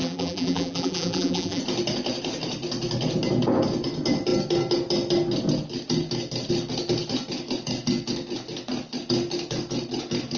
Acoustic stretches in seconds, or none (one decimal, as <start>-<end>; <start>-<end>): 1.6-10.4